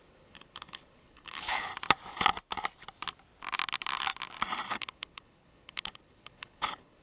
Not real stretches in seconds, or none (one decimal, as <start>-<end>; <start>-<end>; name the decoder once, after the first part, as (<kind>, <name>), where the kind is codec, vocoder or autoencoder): 0.0-1.7 (codec, HILCodec); 4.7-7.0